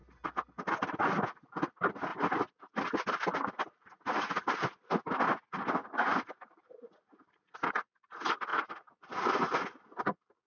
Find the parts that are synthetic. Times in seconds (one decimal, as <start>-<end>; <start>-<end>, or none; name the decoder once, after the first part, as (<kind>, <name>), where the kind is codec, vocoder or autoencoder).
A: none